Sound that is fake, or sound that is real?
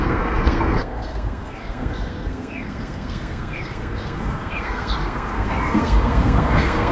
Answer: fake